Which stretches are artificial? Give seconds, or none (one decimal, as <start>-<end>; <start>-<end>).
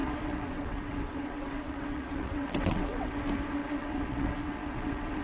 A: 0.0-3.1; 3.6-5.2